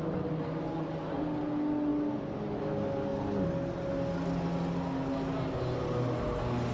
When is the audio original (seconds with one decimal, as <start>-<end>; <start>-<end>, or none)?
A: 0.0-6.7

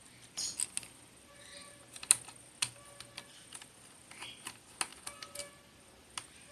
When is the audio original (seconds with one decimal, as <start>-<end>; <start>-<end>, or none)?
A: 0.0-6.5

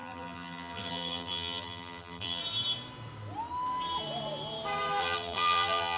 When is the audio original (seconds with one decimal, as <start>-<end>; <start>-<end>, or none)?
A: 2.4-5.0